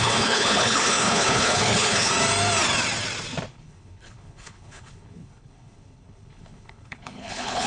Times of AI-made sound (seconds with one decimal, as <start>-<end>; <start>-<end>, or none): 0.0-2.1; 3.5-7.7